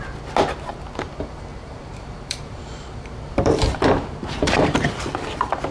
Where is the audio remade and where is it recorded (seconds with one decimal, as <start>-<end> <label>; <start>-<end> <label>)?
0.0-1.5 recorded; 1.5-4.9 remade; 4.9-5.7 recorded